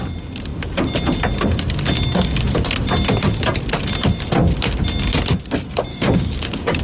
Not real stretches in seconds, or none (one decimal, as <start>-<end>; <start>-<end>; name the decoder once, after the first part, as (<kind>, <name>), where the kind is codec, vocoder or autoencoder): 5.9-6.8 (codec, DAC)